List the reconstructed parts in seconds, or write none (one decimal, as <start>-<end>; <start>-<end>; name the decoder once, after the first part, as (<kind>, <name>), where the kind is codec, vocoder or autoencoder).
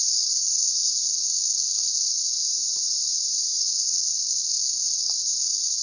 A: 0.0-2.4 (codec, SNAC); 3.6-5.8